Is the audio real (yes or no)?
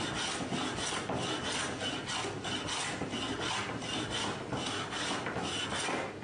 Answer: yes